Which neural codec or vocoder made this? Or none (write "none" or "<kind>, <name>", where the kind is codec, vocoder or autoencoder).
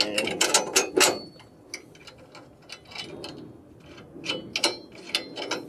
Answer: none